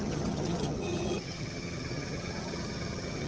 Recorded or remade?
remade